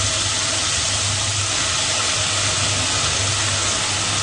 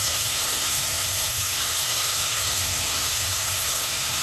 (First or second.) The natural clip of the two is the first